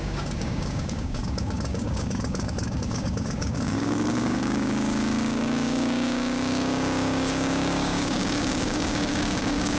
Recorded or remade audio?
remade